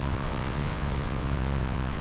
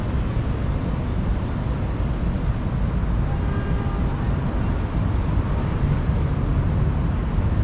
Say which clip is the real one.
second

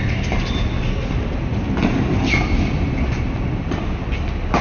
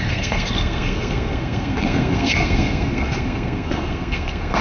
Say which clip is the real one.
first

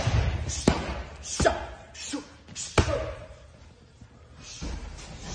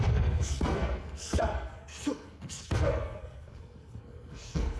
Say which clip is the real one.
first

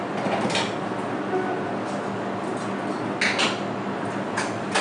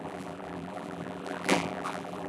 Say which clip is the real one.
first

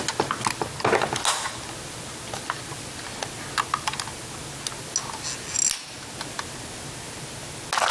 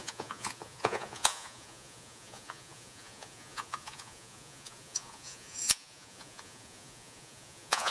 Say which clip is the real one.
first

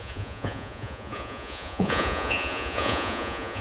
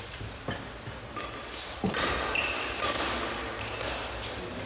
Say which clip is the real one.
second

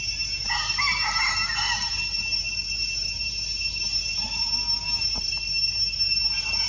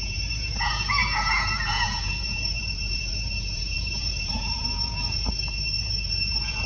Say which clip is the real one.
first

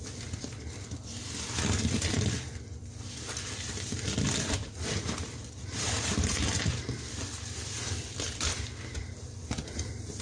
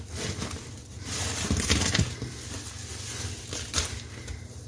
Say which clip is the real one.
second